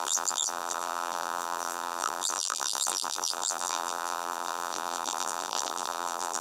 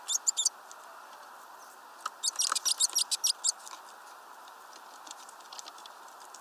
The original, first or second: second